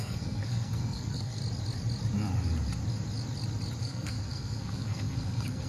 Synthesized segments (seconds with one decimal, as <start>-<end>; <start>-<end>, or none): 0.0-1.4; 3.8-5.7